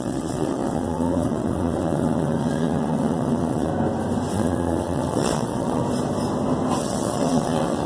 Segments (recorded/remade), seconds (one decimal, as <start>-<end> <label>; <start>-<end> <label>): 0.0-3.7 remade; 3.7-4.3 recorded; 4.3-5.8 remade; 5.8-6.8 recorded; 6.8-7.9 remade